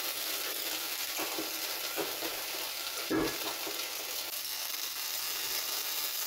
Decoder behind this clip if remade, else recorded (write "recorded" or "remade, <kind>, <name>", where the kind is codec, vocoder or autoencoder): recorded